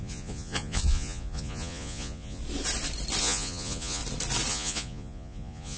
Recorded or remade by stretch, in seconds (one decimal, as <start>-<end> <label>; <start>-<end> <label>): 0.0-2.4 remade; 2.4-3.2 recorded; 3.2-4.0 remade; 4.0-4.5 recorded; 4.5-5.8 remade